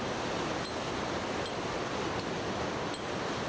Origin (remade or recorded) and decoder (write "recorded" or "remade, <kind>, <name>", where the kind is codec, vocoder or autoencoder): recorded